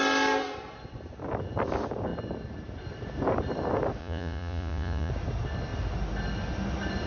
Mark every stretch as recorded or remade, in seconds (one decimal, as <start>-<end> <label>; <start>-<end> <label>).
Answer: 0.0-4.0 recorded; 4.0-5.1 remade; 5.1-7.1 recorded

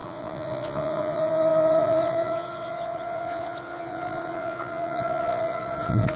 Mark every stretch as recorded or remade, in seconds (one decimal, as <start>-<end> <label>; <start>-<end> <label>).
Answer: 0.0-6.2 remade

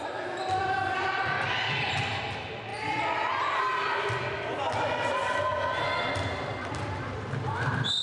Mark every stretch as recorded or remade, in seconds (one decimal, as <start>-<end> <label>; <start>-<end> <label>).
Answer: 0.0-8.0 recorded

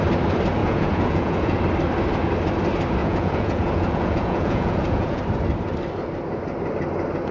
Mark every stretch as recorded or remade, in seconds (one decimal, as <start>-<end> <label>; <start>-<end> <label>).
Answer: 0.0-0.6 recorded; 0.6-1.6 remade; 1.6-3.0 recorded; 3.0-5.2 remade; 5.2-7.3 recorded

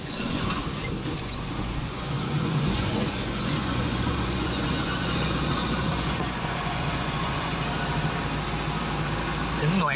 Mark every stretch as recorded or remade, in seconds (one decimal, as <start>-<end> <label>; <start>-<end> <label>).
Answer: 0.0-0.6 remade; 0.6-1.2 recorded; 1.2-7.6 remade; 7.6-10.0 recorded